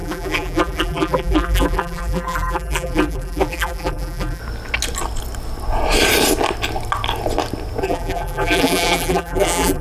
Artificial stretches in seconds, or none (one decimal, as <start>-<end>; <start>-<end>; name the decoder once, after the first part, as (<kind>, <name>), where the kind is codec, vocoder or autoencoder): 0.0-4.4 (vocoder, BigVGAN v2); 7.8-9.8